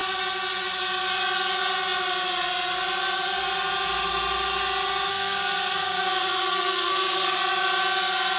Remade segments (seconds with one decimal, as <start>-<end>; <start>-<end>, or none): 5.1-7.4